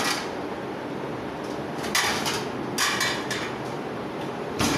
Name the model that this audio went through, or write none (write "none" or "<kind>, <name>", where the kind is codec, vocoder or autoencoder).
none